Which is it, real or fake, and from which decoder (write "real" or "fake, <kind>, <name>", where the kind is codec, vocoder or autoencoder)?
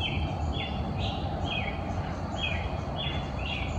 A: real